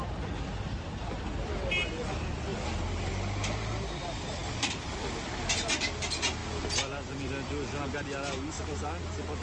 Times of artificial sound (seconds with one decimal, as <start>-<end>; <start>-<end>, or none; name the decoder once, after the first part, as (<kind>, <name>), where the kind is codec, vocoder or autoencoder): none

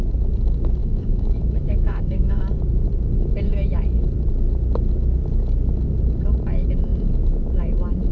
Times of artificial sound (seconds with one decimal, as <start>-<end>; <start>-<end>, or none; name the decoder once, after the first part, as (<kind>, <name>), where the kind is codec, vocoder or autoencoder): 0.8-2.4 (autoencoder, DAC-VAE)